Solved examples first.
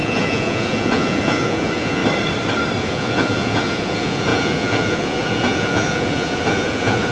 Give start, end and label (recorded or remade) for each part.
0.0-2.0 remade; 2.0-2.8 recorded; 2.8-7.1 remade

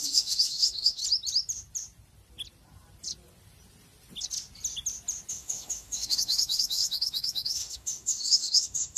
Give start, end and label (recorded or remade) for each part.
0.0-1.0 remade; 1.0-5.3 recorded; 5.3-9.0 remade

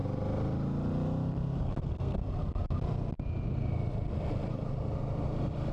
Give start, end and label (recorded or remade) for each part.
0.0-1.6 recorded; 1.6-2.2 remade; 2.2-5.7 recorded

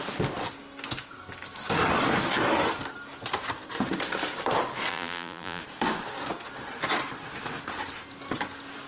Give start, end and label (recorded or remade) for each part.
0.0-4.9 recorded; 4.9-5.6 remade; 5.6-8.9 recorded